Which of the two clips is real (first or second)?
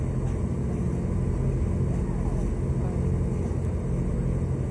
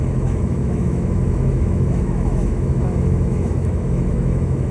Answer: first